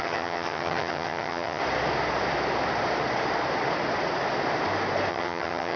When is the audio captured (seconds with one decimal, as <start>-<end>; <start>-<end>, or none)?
1.6-5.1